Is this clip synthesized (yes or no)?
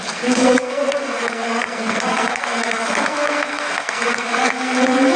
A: yes